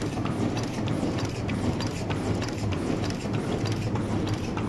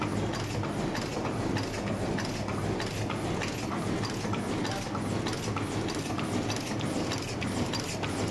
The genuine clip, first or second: second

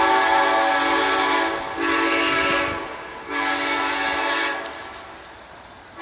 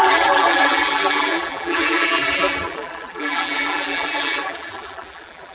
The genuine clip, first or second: first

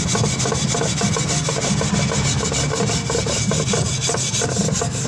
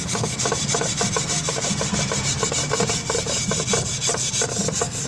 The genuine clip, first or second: first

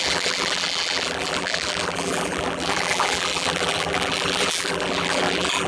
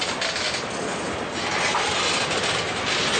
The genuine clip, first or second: second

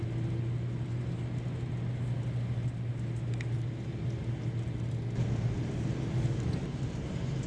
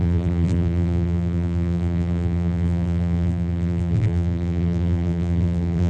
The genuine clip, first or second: first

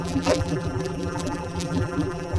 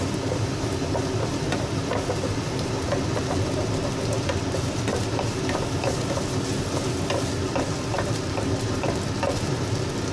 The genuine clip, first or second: second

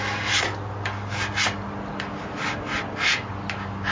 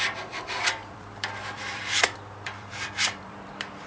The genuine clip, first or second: first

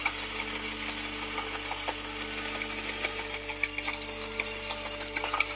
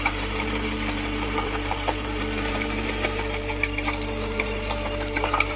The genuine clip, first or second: first